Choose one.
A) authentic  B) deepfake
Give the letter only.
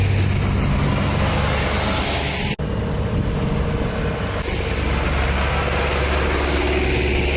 A